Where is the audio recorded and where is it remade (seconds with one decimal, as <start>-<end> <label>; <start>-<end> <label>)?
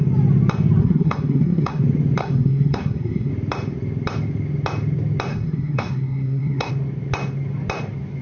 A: 0.0-0.8 recorded; 0.8-1.8 remade; 1.8-2.2 recorded; 2.2-3.3 remade; 3.3-5.3 recorded; 5.3-6.7 remade; 6.7-8.2 recorded